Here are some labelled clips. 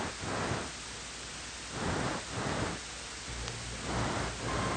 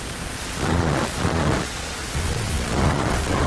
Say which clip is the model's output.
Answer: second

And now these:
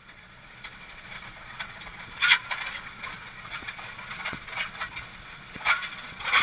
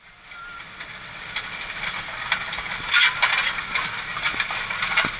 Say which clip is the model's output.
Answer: first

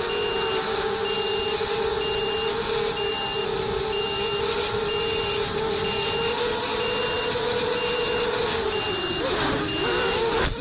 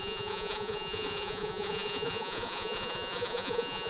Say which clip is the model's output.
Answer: second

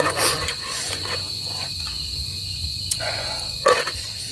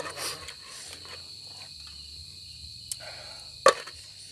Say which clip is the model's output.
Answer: first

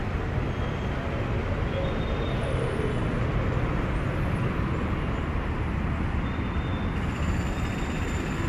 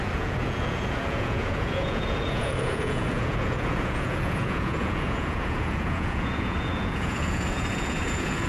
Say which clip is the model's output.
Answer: second